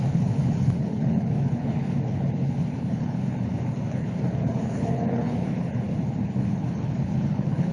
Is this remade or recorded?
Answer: remade